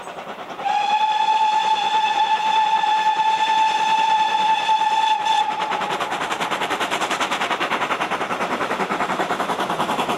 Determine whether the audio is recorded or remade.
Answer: remade